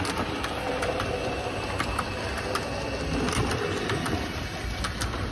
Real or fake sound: real